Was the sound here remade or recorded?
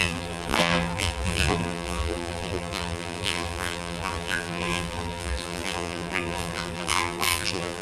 remade